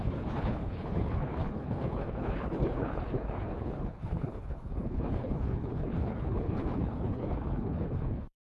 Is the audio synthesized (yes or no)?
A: yes